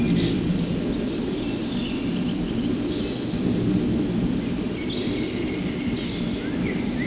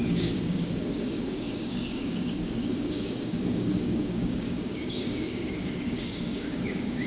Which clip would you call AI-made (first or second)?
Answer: second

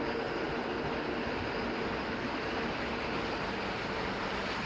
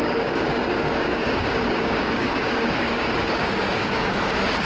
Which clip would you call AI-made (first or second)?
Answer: second